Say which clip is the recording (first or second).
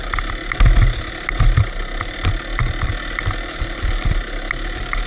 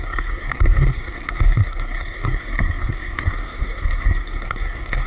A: first